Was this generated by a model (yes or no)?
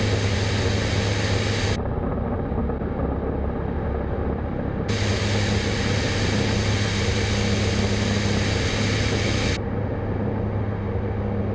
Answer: no